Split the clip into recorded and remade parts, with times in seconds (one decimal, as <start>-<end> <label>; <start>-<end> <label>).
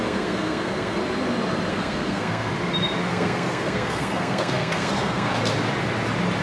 0.0-1.0 remade; 1.0-1.7 recorded; 1.7-2.5 remade; 2.5-3.1 recorded; 3.1-5.3 remade; 5.3-6.4 recorded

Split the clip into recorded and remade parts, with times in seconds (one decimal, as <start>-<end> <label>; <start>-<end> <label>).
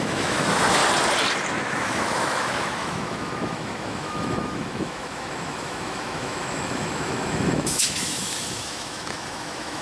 0.0-0.8 remade; 0.8-1.5 recorded; 1.5-9.8 remade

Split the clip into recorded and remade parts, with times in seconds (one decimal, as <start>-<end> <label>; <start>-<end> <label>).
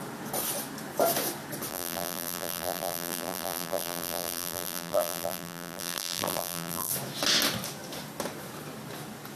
0.0-1.7 recorded; 1.7-6.9 remade; 6.9-9.4 recorded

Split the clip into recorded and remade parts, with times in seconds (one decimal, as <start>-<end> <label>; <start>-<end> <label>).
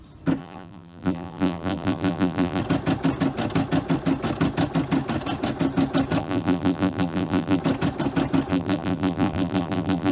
0.0-0.4 recorded; 0.4-2.6 remade; 2.6-6.2 recorded; 6.2-7.6 remade; 7.6-8.5 recorded; 8.5-10.1 remade